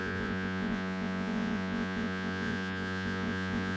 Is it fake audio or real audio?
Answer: fake